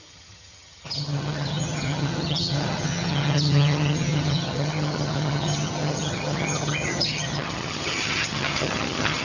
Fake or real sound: fake